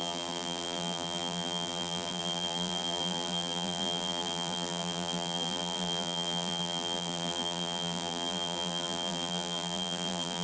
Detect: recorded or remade remade